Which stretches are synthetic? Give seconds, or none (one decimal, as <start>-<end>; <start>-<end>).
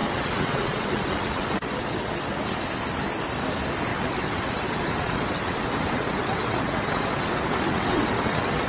0.0-2.4; 3.9-8.7